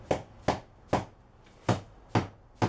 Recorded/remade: recorded